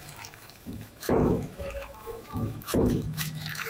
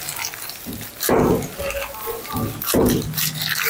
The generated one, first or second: first